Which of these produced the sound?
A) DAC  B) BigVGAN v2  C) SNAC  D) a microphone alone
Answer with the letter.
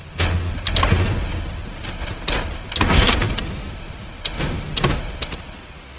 D